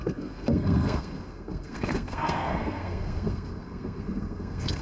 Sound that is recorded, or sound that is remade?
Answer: remade